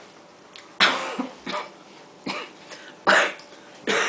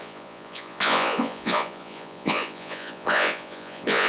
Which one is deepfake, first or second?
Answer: second